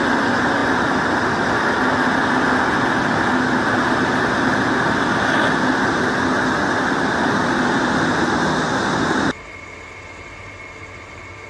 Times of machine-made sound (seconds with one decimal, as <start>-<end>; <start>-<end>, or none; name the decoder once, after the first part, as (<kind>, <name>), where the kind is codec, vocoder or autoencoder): none